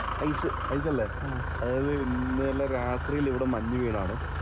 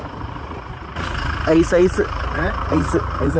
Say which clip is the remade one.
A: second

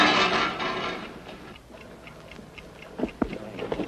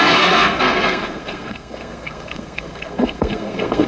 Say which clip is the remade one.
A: second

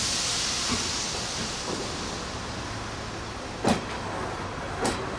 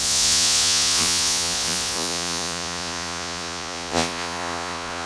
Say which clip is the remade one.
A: second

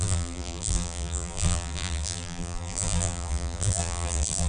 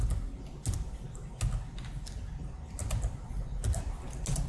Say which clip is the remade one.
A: first